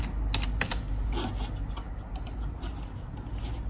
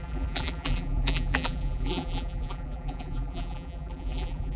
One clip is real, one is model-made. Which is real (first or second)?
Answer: first